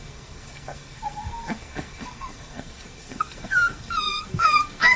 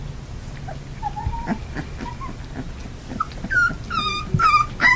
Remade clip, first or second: first